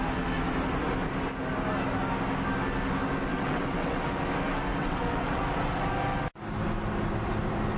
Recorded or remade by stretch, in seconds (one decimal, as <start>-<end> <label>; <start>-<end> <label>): 0.0-3.3 recorded; 3.3-4.1 remade; 4.1-4.8 recorded; 4.8-5.4 remade; 5.4-7.8 recorded